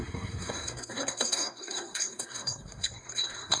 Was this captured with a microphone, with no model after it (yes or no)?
no